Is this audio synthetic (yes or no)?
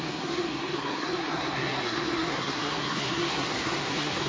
yes